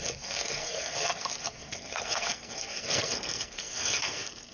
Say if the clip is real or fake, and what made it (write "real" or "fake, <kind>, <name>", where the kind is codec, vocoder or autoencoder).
fake, codec, SNAC